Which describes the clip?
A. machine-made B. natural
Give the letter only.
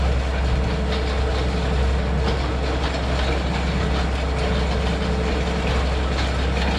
B